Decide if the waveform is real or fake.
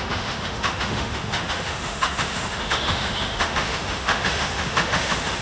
fake